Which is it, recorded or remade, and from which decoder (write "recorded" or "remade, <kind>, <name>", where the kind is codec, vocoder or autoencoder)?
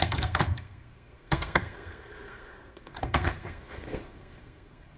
remade, codec, SNAC